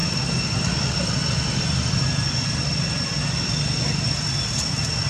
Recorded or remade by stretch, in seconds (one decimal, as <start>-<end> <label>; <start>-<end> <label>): 0.0-5.1 recorded